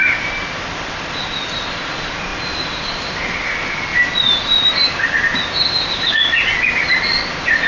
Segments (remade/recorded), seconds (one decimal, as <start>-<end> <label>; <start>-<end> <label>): 0.0-7.7 recorded